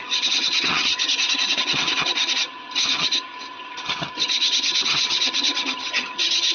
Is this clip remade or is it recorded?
remade